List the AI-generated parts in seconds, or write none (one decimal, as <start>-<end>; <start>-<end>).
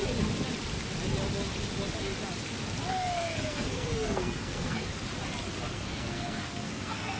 2.9-4.9; 5.7-7.2